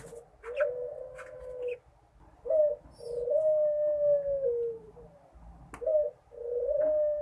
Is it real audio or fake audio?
real